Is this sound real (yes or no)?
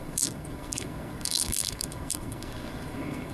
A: no